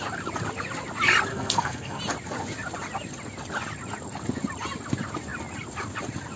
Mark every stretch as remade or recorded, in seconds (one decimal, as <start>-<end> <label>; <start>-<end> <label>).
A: 0.0-1.3 recorded; 1.3-2.0 remade; 2.0-6.4 recorded